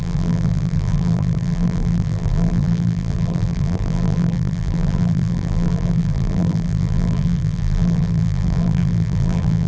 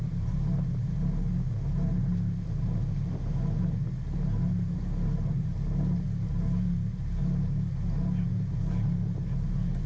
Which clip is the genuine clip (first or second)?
second